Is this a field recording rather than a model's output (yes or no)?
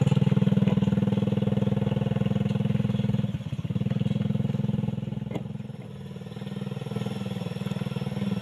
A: yes